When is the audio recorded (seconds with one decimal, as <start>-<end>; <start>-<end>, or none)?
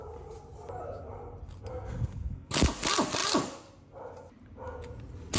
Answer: 0.0-1.7; 2.5-5.4